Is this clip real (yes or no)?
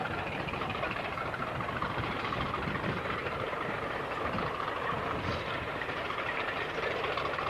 no